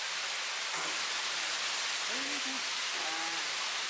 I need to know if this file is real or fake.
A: real